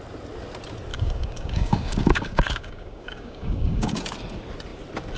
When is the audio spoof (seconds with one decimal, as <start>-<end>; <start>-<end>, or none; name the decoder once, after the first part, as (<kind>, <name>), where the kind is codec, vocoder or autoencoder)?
0.9-4.0 (codec, DAC)